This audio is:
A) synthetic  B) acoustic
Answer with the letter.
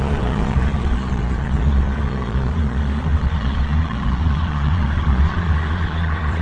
A